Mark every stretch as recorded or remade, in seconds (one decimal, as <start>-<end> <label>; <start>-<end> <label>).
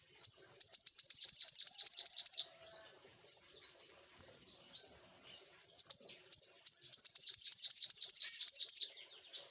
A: 0.0-5.1 remade; 5.1-7.1 recorded; 7.1-9.5 remade